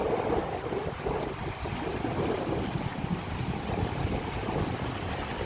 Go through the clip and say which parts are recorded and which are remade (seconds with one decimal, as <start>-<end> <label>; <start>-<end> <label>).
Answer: 0.0-5.5 recorded